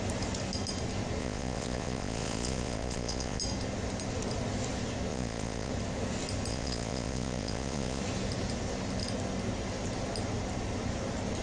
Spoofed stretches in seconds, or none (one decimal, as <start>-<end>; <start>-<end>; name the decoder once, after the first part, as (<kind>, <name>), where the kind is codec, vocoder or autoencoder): 1.2-3.4 (vocoder, Vocos); 5.1-5.7; 6.5-8.0